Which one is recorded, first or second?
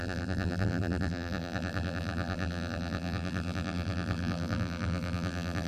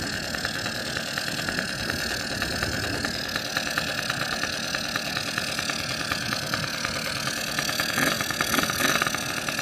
second